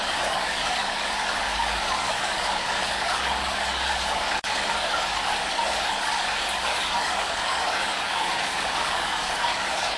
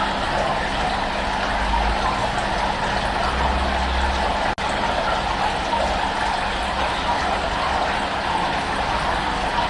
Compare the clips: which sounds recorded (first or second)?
second